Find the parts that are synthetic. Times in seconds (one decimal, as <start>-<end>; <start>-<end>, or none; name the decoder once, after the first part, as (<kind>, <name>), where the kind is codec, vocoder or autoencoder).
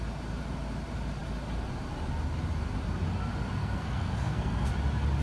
3.6-4.7 (codec, SNAC)